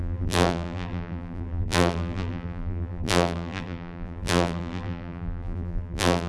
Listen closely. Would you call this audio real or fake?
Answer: fake